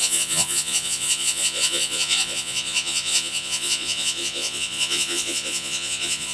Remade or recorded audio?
remade